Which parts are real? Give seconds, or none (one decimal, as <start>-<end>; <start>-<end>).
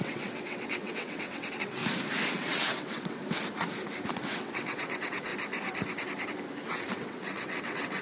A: 1.8-2.3; 3.2-4.1; 5.3-6.7